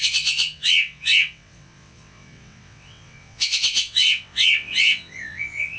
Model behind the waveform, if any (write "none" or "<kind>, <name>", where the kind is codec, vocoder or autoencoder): vocoder, WaveNeXt